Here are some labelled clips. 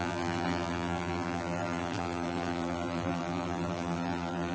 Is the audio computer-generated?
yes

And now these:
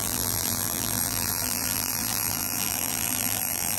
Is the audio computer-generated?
yes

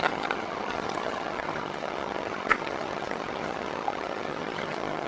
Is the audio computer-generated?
yes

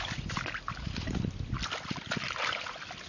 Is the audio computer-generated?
no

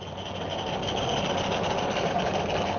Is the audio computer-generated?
no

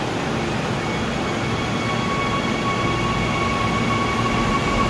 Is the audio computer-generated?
no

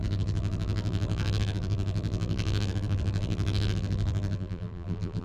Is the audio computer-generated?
yes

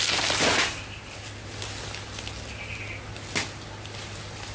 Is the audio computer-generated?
no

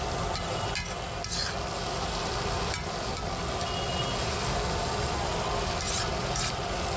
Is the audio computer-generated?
no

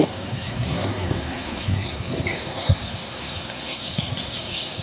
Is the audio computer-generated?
yes